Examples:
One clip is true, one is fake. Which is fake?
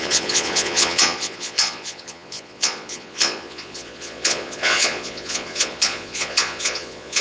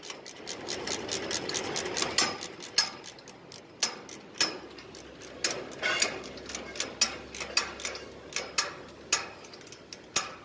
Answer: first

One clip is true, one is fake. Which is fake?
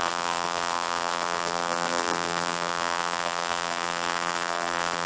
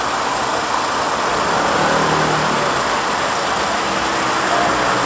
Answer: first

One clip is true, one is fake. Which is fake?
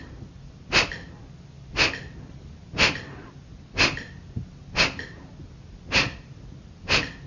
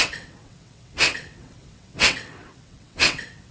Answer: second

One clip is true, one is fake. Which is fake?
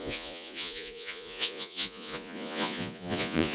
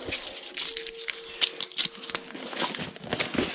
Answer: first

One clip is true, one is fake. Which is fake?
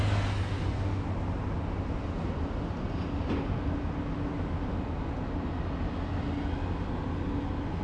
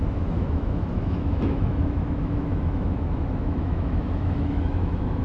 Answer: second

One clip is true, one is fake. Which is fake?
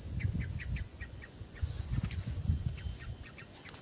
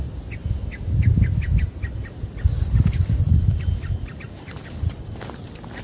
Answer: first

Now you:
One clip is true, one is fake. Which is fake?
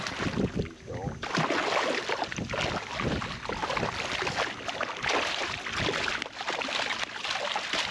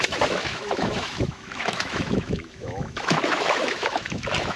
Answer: second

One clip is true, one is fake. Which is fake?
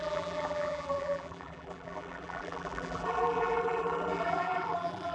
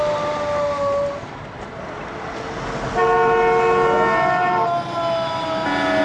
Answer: first